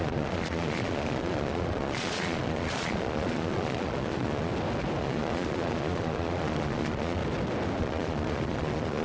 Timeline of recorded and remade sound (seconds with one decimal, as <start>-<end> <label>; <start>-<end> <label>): 0.0-4.5 remade; 4.5-5.0 recorded; 5.0-7.2 remade; 7.2-7.8 recorded; 7.8-9.0 remade